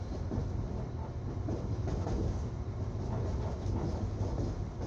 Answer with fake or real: real